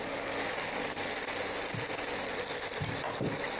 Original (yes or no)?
yes